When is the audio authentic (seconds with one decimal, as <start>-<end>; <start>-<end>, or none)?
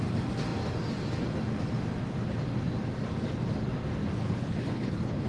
0.0-4.2